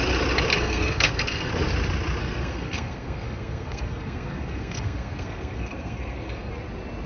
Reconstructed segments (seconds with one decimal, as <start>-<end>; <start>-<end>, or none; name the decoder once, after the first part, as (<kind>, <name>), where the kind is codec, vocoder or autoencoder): 0.5-1.5 (codec, SNAC); 2.2-6.5